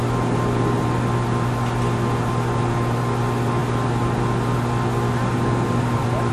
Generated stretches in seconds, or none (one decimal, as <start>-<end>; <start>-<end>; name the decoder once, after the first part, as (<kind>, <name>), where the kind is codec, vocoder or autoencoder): none